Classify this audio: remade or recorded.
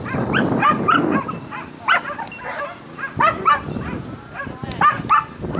recorded